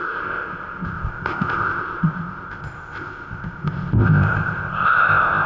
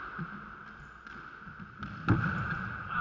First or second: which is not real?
first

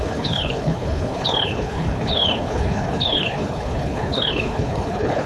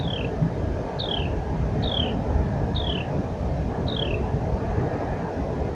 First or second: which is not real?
first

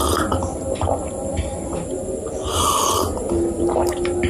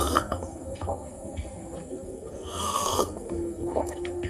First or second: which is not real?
second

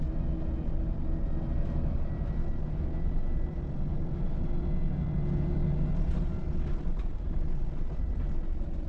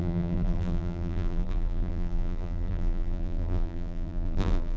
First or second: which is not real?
second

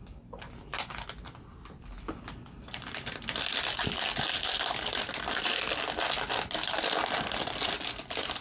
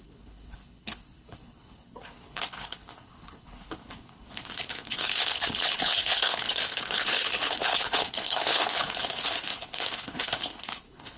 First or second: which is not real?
second